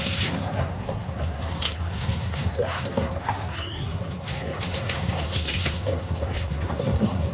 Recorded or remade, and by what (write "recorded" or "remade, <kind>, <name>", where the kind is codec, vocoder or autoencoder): remade, codec, SNAC